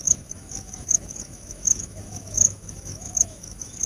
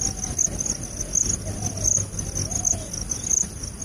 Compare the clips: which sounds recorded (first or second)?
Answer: second